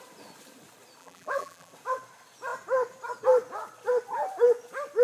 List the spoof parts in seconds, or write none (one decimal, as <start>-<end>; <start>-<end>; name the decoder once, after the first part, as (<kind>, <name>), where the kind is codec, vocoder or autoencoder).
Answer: 1.0-1.7 (vocoder, BigVGAN v2)